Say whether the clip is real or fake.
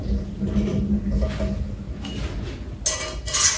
real